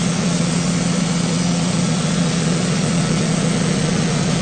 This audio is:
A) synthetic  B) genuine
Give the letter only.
A